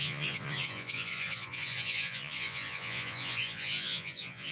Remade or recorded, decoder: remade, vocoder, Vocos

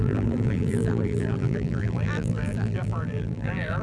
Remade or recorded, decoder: remade, vocoder, BigVGAN v2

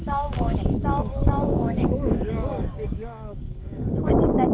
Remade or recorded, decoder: remade, codec, DAC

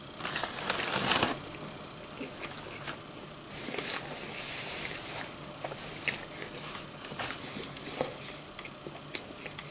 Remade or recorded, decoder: recorded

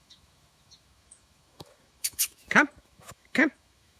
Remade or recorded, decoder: remade, autoencoder, DAC-VAE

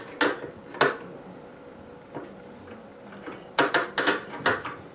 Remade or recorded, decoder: recorded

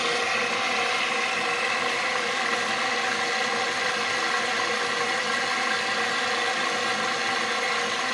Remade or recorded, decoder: recorded